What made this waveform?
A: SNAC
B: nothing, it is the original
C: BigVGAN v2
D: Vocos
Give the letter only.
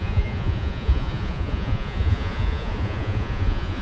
D